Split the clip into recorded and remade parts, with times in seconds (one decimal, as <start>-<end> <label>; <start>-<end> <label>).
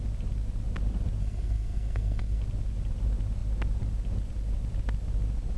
0.0-1.2 recorded; 1.2-2.4 remade; 2.4-5.6 recorded